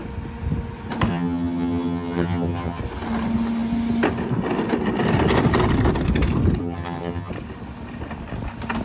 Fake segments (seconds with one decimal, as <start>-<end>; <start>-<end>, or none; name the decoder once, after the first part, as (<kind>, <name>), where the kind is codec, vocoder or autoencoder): 1.1-2.8 (vocoder, HiFi-GAN); 6.6-7.3